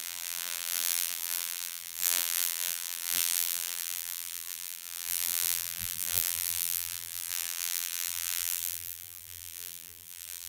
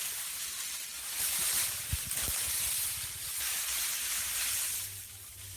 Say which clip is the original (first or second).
second